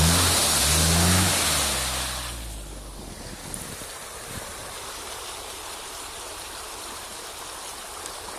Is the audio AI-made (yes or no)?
no